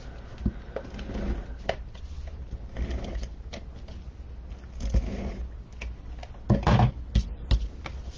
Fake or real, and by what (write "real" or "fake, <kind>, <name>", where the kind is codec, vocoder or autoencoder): real